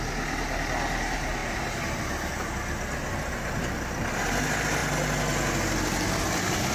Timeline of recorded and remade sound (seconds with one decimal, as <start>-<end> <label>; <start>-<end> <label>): 0.0-6.7 recorded